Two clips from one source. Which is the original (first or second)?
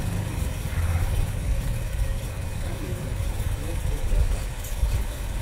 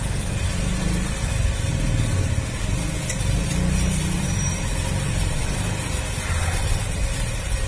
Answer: second